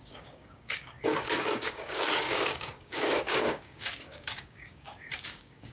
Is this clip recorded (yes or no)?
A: no